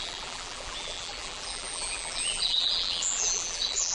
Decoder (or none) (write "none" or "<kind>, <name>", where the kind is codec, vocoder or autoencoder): vocoder, BigVGAN v2